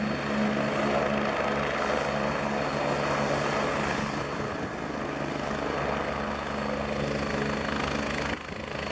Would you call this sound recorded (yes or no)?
yes